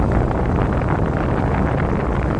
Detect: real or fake real